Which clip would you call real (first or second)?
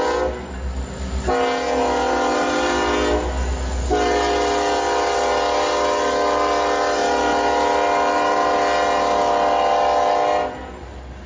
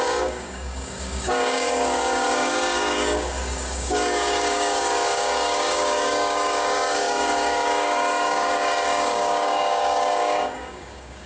first